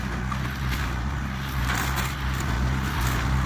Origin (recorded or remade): recorded